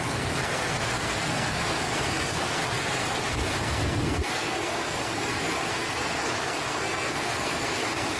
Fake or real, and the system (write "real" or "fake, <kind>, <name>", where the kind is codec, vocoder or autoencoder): fake, codec, SNAC